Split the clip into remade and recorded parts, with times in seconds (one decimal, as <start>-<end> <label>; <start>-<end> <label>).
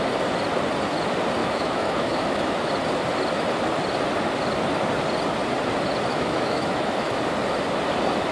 0.0-1.4 recorded; 1.4-2.7 remade; 2.7-6.1 recorded; 6.1-7.2 remade; 7.2-8.3 recorded